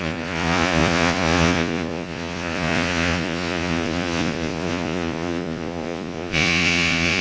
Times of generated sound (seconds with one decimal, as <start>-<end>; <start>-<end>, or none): 0.0-7.2